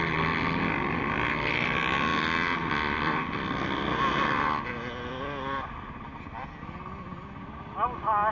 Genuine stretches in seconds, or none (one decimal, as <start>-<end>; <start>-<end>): 0.0-8.3